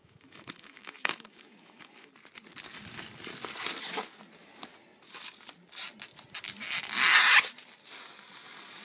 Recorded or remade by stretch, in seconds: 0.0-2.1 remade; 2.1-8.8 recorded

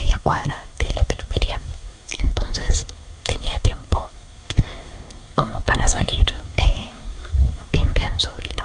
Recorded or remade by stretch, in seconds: 0.0-8.6 remade

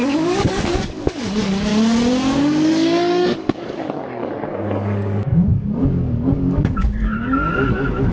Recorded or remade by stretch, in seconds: 0.0-1.7 remade; 1.7-2.4 recorded; 2.4-8.1 remade

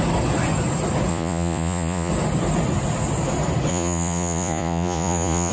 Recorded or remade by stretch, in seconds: 0.0-1.1 recorded; 1.1-2.1 remade; 2.1-3.7 recorded; 3.7-5.5 remade

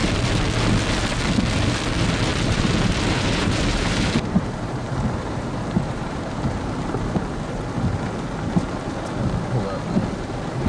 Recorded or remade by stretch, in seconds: 0.0-2.3 recorded; 2.3-7.1 remade; 7.1-10.7 recorded

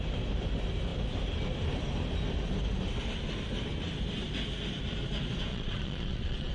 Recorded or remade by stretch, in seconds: 0.0-5.5 recorded; 5.5-6.5 remade